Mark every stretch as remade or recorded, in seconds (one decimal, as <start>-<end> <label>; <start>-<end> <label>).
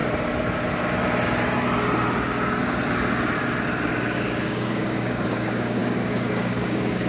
0.0-3.9 recorded; 3.9-7.1 remade